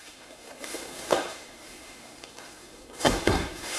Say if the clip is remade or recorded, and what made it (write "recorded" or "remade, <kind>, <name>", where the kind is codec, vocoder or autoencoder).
remade, codec, SNAC